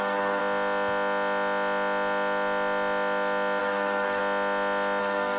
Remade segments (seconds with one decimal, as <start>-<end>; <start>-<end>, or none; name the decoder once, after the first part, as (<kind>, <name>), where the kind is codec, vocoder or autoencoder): 0.0-0.4 (codec, SNAC); 3.6-4.2; 5.0-5.4